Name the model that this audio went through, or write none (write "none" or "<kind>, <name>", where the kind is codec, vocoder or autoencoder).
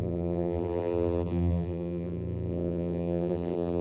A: vocoder, BigVGAN v2